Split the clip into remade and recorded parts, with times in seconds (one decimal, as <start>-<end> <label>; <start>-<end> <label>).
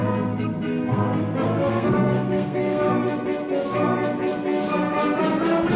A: 0.0-2.9 remade; 2.9-5.8 recorded